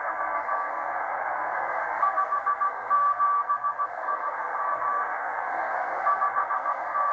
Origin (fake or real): fake